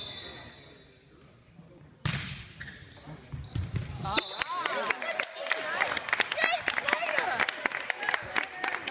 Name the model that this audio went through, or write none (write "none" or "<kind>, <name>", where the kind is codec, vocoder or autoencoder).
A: none